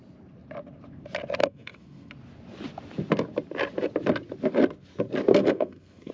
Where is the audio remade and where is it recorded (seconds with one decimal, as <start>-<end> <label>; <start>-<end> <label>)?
0.0-1.4 recorded; 1.4-2.1 remade; 2.1-5.3 recorded; 5.3-6.1 remade